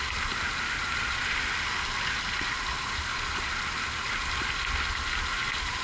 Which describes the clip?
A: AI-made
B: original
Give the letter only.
B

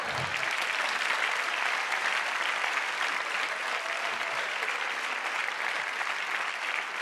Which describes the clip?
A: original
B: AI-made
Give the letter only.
B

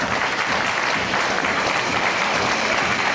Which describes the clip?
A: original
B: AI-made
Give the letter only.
A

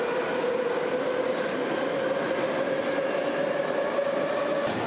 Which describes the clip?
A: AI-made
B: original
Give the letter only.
B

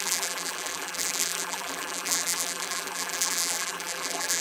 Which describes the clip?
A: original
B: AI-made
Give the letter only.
B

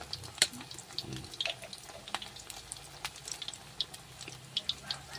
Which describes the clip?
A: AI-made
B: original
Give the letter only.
B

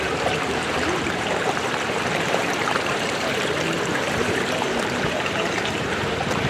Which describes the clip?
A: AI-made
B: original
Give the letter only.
A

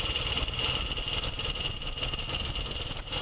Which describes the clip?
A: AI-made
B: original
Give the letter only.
B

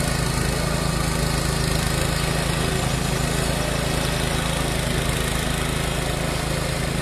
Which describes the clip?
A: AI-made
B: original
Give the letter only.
B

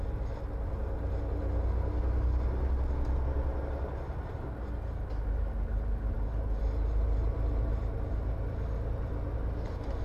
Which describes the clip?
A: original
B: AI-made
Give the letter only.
A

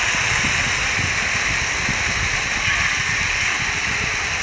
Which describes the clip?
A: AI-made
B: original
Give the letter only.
B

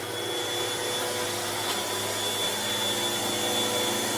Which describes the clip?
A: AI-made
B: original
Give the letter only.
B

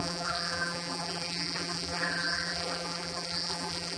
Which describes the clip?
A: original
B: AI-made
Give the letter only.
B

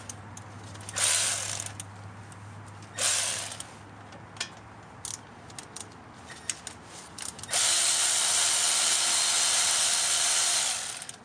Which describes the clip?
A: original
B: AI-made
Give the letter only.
A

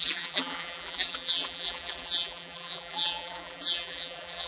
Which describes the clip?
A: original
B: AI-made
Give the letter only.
B